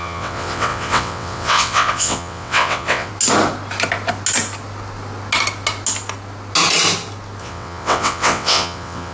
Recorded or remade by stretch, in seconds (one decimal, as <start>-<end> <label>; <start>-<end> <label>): 0.0-3.1 remade; 3.1-7.4 recorded; 7.4-9.1 remade